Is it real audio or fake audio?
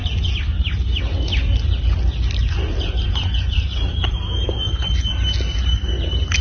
real